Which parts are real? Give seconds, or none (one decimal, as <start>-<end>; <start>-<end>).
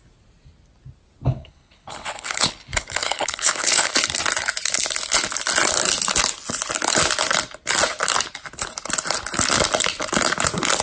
0.0-1.3; 3.9-10.8